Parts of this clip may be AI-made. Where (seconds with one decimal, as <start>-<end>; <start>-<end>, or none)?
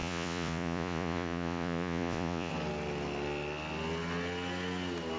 0.0-2.5